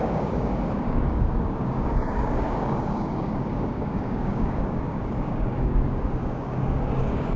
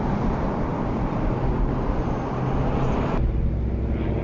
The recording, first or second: second